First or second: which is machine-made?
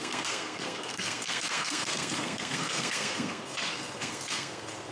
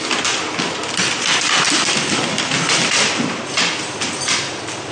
first